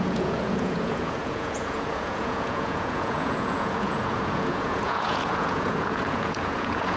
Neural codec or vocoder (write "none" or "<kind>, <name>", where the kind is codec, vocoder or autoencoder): vocoder, Vocos